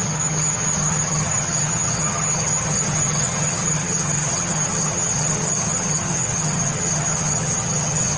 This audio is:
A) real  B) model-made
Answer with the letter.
B